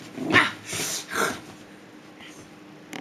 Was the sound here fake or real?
real